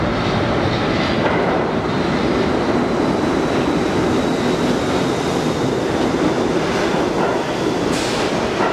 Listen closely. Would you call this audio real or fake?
real